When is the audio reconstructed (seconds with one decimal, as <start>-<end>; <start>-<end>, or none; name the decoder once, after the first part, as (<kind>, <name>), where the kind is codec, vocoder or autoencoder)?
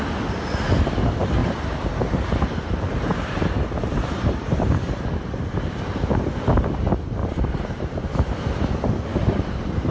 1.4-5.8 (vocoder, BigVGAN v2); 7.2-8.3; 9.1-9.9